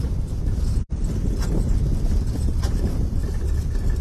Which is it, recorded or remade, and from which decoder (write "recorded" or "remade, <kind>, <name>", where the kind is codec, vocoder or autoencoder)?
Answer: remade, vocoder, BigVGAN v2